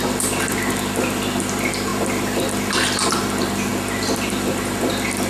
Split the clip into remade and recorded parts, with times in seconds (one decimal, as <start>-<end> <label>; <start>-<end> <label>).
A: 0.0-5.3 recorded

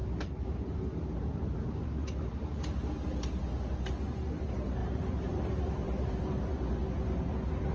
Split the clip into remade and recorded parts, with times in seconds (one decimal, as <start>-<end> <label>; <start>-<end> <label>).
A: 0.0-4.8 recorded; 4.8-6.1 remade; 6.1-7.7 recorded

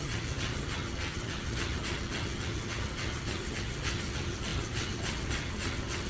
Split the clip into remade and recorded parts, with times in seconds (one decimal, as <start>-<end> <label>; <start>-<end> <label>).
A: 0.0-6.1 remade

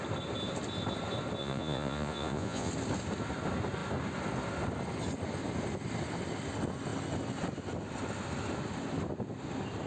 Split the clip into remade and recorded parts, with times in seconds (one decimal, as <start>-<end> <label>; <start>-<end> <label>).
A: 0.0-1.4 recorded; 1.4-2.7 remade; 2.7-9.9 recorded

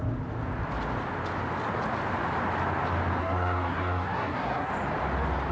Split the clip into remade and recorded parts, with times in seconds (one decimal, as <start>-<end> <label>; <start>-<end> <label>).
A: 0.0-3.2 recorded; 3.2-4.7 remade; 4.7-5.5 recorded

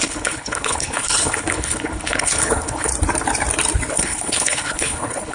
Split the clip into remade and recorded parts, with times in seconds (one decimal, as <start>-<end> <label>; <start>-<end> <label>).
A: 0.0-2.9 remade; 2.9-3.9 recorded; 3.9-5.3 remade

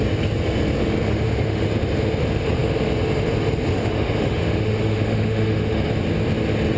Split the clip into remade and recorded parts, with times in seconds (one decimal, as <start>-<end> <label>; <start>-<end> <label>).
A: 0.0-1.1 recorded; 1.1-1.7 remade; 1.7-3.7 recorded; 3.7-5.9 remade; 5.9-6.8 recorded

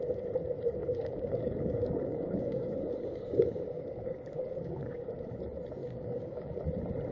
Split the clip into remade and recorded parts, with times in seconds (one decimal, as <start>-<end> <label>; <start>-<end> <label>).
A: 0.0-0.8 recorded; 0.8-5.1 remade; 5.1-5.8 recorded; 5.8-6.6 remade; 6.6-7.1 recorded